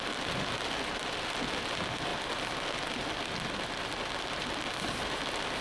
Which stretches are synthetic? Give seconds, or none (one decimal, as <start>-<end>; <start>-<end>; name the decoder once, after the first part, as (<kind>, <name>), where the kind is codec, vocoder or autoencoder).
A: none